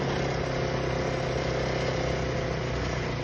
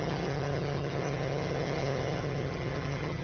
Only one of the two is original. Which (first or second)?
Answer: first